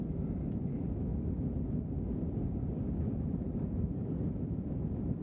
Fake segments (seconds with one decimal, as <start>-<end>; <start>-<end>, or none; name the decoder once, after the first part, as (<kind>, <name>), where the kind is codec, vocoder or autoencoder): none